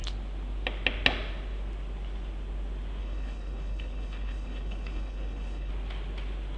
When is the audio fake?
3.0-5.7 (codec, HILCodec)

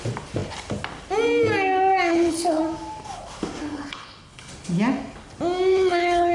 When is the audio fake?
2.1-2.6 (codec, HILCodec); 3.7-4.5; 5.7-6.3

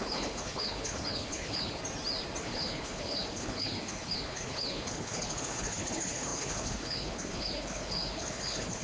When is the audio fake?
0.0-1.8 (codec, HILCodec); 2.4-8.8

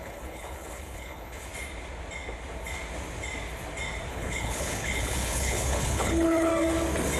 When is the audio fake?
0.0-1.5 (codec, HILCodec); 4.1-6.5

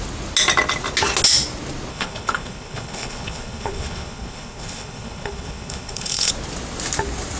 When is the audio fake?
1.9-6.3 (codec, HILCodec)

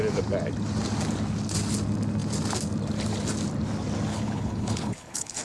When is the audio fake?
4.1-5.4 (codec, HILCodec)

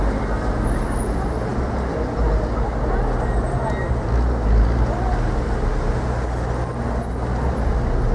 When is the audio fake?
none